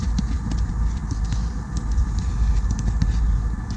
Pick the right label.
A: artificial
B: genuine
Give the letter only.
B